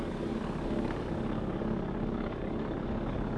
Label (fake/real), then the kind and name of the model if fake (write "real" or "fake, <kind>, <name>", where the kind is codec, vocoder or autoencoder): fake, codec, DAC